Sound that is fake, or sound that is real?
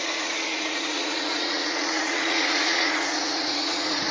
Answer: fake